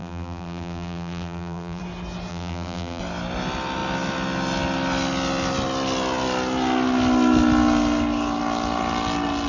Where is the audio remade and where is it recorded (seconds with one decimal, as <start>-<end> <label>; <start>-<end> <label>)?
0.0-1.8 remade; 1.8-2.3 recorded; 2.3-3.0 remade; 3.0-9.5 recorded